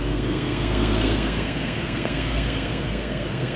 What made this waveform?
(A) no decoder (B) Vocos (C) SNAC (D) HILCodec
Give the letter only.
C